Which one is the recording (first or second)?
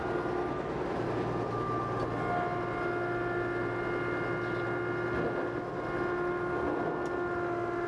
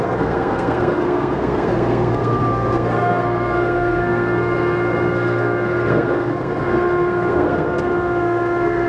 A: first